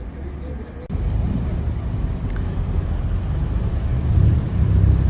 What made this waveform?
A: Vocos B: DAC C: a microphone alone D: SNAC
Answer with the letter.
C